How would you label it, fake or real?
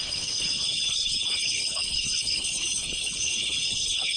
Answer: fake